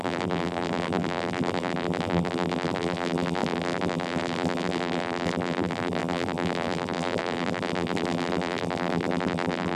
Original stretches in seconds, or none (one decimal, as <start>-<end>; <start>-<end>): none